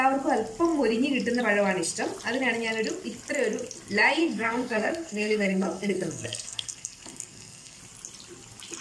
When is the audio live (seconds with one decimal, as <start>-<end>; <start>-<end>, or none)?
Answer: 0.0-4.2; 7.8-8.8